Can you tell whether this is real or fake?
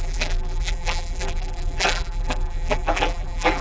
fake